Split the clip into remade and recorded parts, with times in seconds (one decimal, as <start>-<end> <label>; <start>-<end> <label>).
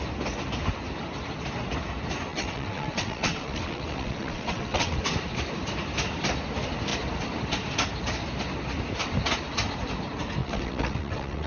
0.0-2.3 recorded; 2.3-5.0 remade; 5.0-10.4 recorded; 10.4-11.5 remade